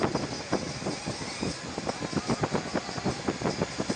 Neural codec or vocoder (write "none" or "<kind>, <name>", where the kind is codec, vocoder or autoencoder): none